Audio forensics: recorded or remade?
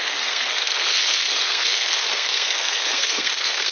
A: remade